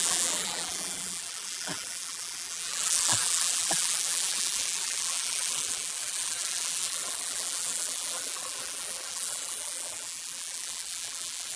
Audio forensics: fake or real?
fake